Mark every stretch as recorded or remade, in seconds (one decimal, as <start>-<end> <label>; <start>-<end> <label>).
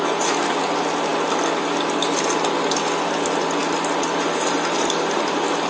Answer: 0.0-5.7 recorded